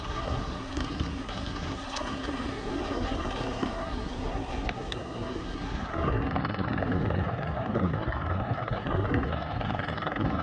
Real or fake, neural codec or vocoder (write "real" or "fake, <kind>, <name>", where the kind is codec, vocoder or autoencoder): fake, codec, SNAC